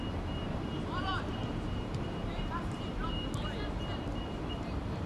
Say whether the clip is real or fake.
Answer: fake